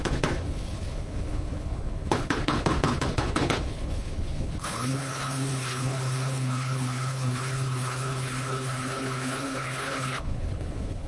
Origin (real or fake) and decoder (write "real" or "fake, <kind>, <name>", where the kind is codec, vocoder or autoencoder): fake, codec, HILCodec